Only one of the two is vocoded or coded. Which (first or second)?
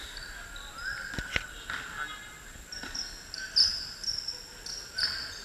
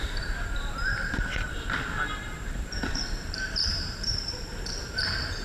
second